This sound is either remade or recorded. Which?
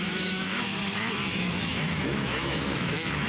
remade